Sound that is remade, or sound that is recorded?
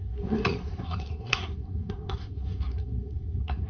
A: remade